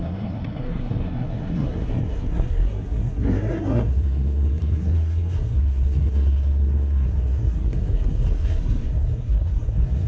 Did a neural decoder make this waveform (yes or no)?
yes